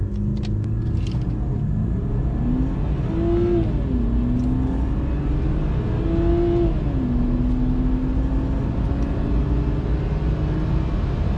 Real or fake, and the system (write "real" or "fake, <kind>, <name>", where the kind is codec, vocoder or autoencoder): real